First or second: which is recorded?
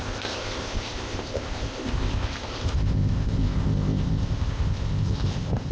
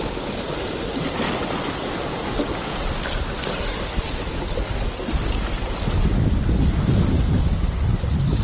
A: second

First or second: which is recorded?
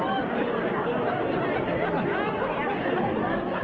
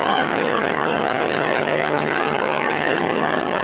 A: first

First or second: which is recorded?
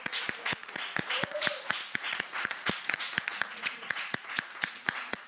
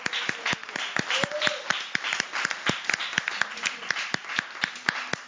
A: second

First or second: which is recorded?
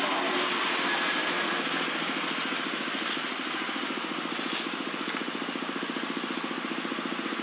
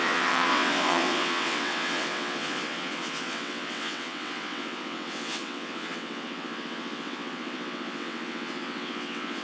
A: first